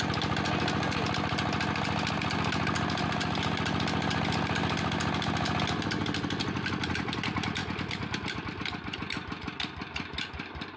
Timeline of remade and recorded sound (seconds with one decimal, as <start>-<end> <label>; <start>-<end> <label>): 0.0-10.8 recorded